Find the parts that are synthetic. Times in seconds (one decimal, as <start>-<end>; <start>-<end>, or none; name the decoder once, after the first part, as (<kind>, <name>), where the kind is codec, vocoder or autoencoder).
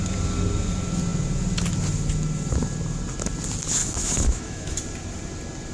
3.8-4.8 (autoencoder, DAC-VAE)